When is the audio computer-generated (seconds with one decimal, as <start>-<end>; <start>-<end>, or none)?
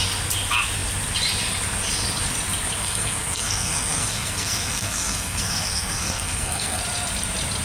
2.8-6.8